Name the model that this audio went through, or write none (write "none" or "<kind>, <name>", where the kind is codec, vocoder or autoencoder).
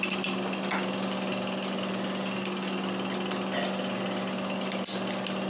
none